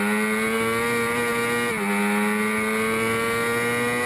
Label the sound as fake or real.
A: real